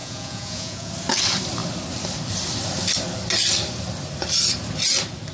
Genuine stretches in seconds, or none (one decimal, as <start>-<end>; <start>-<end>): 0.9-5.3